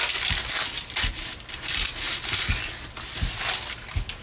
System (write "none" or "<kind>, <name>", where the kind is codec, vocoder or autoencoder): none